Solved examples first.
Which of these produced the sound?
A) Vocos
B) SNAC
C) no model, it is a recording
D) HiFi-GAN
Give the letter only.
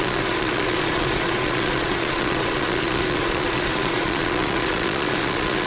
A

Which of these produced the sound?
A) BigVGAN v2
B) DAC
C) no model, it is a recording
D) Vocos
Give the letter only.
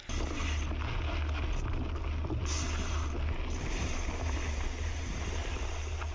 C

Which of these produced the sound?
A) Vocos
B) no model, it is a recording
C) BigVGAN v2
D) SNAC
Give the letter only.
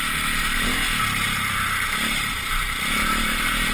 B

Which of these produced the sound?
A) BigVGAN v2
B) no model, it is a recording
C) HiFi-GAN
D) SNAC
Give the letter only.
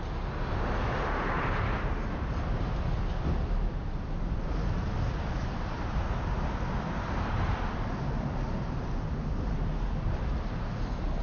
B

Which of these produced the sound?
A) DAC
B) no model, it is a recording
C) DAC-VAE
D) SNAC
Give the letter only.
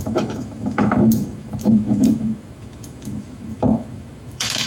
C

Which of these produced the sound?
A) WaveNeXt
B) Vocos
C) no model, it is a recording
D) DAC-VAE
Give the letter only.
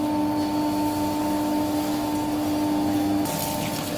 C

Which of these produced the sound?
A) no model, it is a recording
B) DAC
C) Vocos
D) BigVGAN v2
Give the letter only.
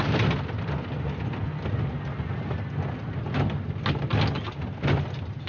A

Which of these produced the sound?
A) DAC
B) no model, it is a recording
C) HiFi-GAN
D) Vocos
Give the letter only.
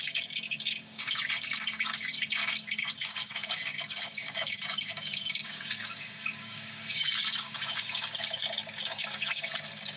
A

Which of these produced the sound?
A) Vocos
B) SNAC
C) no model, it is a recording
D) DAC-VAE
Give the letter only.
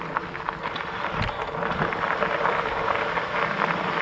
C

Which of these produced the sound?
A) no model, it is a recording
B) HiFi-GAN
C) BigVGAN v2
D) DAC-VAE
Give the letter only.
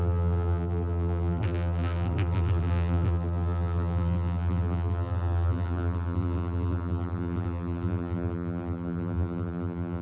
C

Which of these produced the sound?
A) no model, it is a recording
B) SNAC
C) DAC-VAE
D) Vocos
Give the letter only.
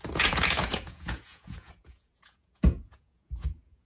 D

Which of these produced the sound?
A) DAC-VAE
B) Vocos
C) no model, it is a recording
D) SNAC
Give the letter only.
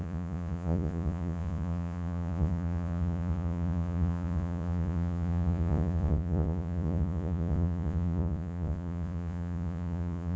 B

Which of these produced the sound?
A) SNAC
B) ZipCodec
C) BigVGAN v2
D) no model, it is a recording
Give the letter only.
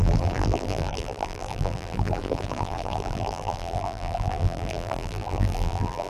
C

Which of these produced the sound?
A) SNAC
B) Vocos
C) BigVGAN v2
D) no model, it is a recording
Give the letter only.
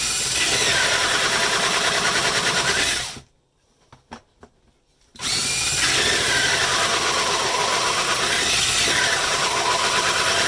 D